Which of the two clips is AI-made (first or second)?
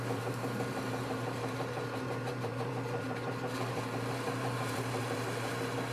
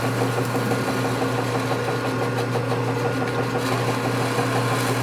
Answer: first